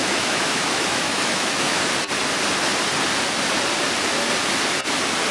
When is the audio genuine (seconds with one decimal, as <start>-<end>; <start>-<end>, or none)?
1.8-5.3